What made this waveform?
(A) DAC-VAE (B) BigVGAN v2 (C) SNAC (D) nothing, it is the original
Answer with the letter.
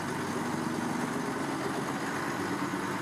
D